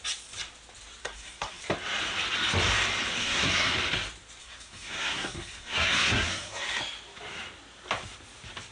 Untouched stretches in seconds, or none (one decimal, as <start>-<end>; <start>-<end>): 0.0-1.0; 1.6-3.2; 3.7-4.4; 6.8-8.7